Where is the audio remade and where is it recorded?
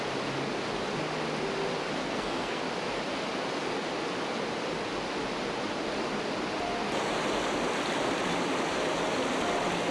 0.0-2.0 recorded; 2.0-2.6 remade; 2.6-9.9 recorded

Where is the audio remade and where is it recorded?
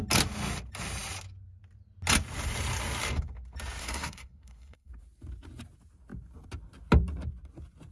0.0-3.8 recorded; 3.8-4.9 remade; 4.9-7.9 recorded